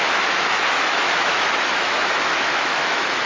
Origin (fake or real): fake